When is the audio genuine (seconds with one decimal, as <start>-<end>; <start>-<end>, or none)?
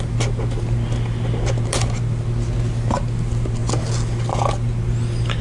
0.0-5.4